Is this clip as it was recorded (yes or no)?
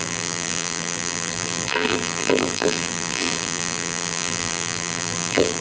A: no